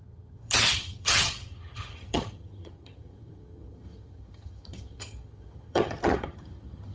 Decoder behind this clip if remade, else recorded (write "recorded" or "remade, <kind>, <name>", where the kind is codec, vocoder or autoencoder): remade, vocoder, HiFi-GAN